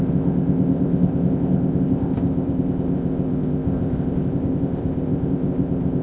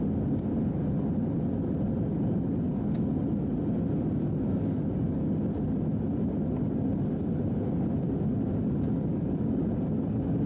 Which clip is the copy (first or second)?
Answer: first